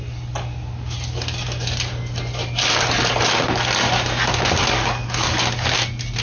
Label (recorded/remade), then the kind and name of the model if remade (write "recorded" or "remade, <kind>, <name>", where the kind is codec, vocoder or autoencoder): recorded